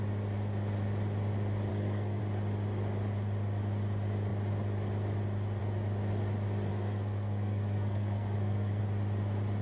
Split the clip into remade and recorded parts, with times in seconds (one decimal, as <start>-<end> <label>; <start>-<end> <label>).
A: 0.0-1.7 recorded; 1.7-2.2 remade; 2.2-6.7 recorded; 6.7-8.8 remade; 8.8-9.6 recorded